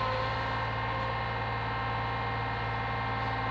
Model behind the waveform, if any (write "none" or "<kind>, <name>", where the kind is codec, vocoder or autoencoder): none